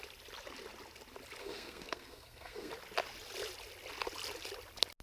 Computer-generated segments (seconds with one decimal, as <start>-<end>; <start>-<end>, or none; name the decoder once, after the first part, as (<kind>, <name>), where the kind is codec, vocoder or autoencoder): 1.4-2.7 (codec, SNAC)